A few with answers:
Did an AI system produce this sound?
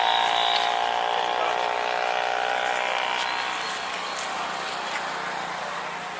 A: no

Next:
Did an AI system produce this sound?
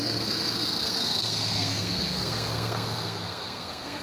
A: yes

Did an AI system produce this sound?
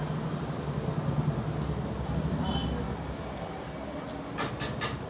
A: no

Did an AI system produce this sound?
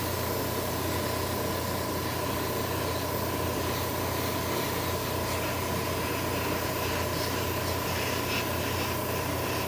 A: no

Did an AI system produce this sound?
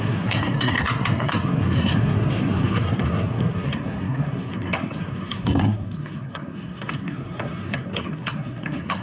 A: yes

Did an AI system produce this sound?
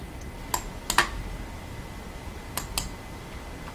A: no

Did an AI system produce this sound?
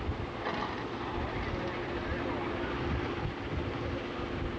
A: no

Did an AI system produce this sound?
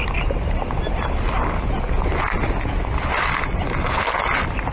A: no